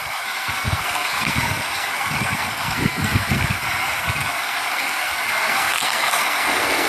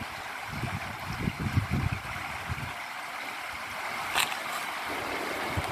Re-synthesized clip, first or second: first